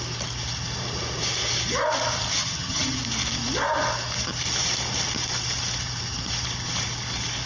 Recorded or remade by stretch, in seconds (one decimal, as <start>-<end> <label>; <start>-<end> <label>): 0.0-2.4 recorded; 2.4-3.0 remade; 3.0-7.5 recorded